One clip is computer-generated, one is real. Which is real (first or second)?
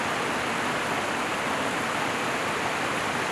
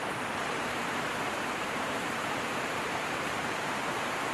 first